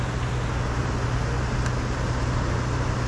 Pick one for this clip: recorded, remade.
recorded